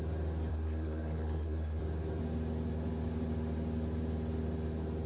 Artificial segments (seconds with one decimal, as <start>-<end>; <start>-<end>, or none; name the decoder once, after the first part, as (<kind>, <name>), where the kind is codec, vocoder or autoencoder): 0.5-1.8 (codec, SNAC)